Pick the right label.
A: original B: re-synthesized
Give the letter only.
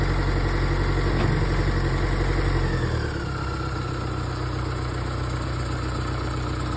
A